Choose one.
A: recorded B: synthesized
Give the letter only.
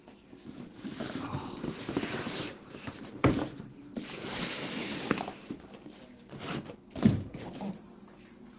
B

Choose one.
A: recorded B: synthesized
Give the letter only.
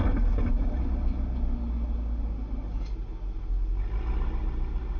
A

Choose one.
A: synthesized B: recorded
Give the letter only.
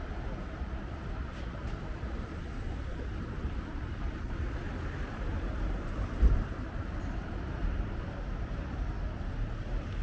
A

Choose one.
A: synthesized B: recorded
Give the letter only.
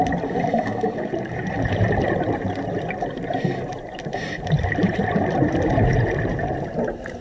A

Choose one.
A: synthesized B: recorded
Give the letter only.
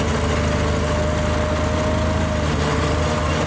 B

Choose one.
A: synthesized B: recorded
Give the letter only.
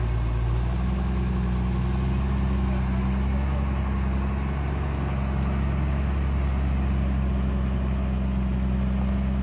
B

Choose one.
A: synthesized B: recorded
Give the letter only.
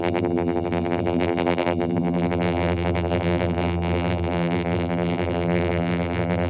A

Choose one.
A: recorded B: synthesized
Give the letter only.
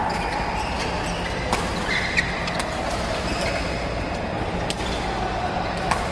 A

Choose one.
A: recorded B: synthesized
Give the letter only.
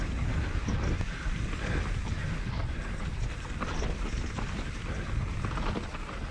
A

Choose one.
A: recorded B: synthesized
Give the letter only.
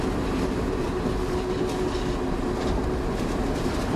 A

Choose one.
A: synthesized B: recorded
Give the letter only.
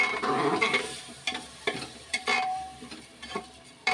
A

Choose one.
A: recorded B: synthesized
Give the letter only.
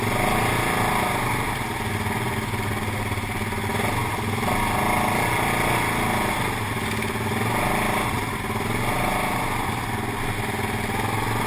A